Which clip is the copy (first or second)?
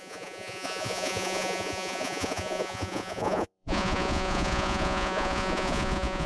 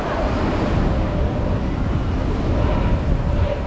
first